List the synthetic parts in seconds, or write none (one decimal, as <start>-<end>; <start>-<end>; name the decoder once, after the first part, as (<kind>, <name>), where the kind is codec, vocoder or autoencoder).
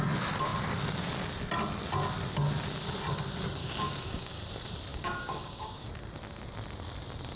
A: 3.6-4.4 (codec, DAC); 4.9-5.9